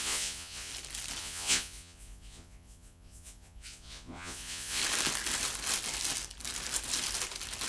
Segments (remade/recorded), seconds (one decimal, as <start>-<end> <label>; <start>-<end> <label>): 0.0-0.7 remade; 0.7-1.2 recorded; 1.2-4.8 remade; 4.8-7.7 recorded